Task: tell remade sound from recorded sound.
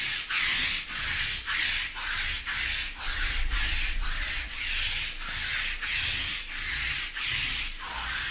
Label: recorded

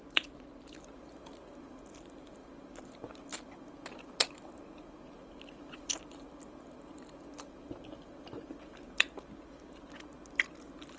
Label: recorded